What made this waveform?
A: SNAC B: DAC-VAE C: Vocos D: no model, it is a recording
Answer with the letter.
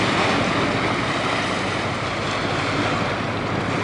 D